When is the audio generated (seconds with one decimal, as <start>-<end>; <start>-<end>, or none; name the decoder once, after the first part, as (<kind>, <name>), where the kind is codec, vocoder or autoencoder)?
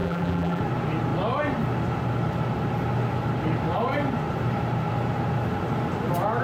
0.0-0.6 (vocoder, BigVGAN v2)